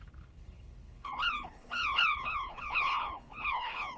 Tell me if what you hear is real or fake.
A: fake